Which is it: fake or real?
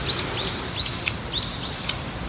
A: real